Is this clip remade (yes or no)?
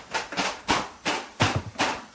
no